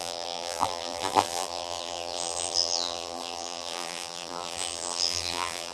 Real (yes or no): no